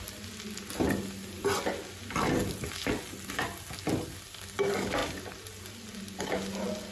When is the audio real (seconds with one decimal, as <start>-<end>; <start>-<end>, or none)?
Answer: 0.0-6.9